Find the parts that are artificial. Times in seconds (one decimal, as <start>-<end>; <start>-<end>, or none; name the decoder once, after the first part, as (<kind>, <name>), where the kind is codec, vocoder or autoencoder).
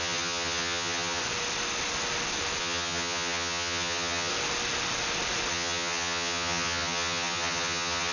0.0-1.2 (vocoder, HiFi-GAN); 2.6-4.3; 5.5-8.1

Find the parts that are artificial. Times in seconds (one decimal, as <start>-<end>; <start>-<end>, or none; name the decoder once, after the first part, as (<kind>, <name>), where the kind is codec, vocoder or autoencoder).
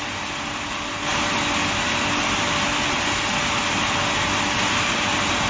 none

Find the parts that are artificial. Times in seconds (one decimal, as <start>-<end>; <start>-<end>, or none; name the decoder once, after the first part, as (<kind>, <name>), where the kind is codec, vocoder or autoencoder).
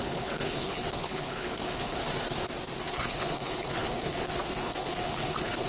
0.0-2.0 (codec, HILCodec); 2.8-5.7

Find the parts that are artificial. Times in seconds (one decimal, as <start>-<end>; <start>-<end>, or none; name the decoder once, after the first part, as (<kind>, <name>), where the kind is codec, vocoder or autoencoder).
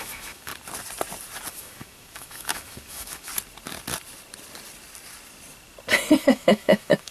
0.0-0.5 (autoencoder, DAC-VAE); 1.5-3.3; 6.2-7.1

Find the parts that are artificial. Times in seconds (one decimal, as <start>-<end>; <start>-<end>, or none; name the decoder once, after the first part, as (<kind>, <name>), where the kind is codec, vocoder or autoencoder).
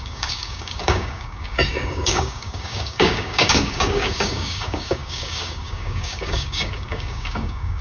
0.0-7.8 (codec, DAC)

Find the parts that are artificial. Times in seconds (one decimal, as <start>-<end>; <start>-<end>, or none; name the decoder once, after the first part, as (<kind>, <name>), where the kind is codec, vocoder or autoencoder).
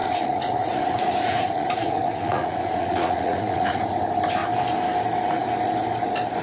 0.0-3.8 (vocoder, Vocos)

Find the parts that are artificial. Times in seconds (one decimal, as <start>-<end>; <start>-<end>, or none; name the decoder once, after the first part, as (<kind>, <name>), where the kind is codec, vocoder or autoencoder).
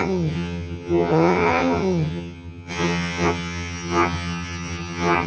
0.0-5.3 (vocoder, HiFi-GAN)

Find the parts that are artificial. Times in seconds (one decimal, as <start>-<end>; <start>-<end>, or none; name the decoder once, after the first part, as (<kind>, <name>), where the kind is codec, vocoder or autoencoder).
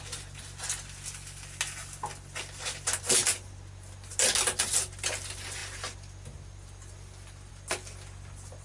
none